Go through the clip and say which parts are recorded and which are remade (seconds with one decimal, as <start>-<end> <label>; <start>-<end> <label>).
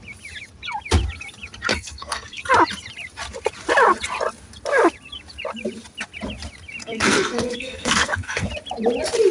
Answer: 0.0-1.7 recorded; 1.7-2.4 remade; 2.4-6.8 recorded; 6.8-8.5 remade; 8.5-9.3 recorded